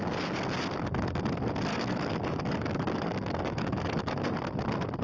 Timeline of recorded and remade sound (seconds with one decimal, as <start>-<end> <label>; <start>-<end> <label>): 0.0-1.7 recorded; 1.7-4.1 remade; 4.1-5.0 recorded